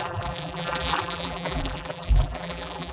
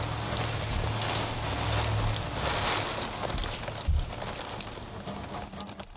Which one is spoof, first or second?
first